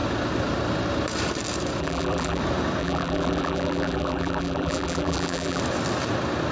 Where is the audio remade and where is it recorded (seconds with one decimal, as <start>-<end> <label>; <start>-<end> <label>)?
0.0-1.8 recorded; 1.8-2.4 remade; 2.4-2.8 recorded; 2.8-5.6 remade; 5.6-6.5 recorded

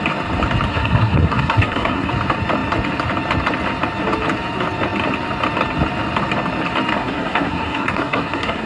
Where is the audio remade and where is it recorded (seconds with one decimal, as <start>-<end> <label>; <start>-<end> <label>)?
0.0-0.7 recorded; 0.7-2.1 remade; 2.1-7.0 recorded; 7.0-8.7 remade

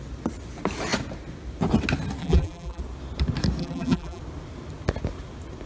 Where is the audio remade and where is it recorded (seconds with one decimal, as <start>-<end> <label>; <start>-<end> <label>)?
0.0-2.2 recorded; 2.2-2.8 remade; 2.8-3.6 recorded; 3.6-4.2 remade; 4.2-5.7 recorded

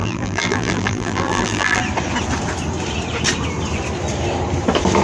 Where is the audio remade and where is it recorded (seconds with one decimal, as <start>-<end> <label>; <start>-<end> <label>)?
0.0-1.8 remade; 1.8-5.0 recorded

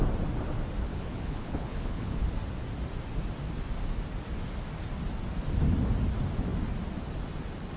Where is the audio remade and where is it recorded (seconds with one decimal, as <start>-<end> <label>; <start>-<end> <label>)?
0.0-0.9 recorded; 0.9-2.2 remade; 2.2-7.8 recorded

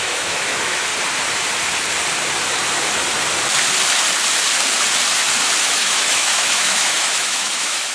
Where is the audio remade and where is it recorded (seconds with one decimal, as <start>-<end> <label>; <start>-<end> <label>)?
0.0-0.9 remade; 0.9-5.6 recorded; 5.6-7.9 remade

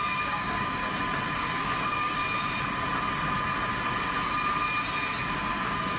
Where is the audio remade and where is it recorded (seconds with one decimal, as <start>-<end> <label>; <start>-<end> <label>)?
0.0-0.8 remade; 0.8-1.5 recorded; 1.5-2.2 remade; 2.2-5.5 recorded; 5.5-6.0 remade

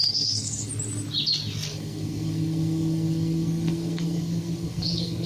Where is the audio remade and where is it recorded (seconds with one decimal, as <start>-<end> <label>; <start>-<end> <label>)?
0.0-0.7 remade; 0.7-1.7 recorded; 1.7-5.3 remade